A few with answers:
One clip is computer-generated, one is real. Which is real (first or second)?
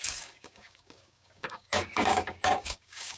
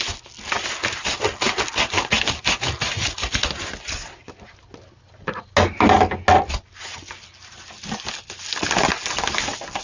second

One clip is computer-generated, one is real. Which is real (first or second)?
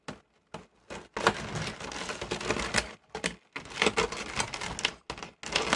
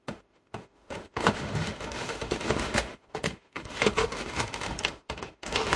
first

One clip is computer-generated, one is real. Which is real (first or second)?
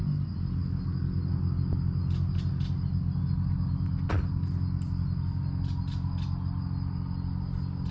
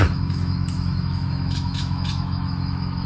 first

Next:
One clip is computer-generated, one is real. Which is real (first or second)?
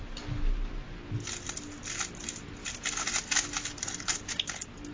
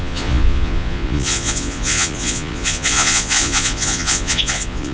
first